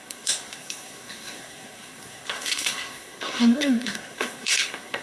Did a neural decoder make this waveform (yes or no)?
yes